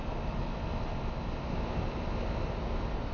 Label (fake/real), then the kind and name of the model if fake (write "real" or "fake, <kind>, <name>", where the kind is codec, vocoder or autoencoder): real